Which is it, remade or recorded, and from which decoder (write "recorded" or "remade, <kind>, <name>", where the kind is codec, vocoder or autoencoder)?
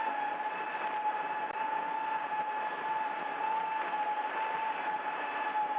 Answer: recorded